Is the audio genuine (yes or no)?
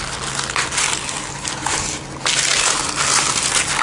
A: yes